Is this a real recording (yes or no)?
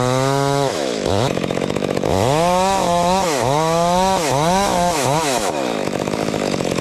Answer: no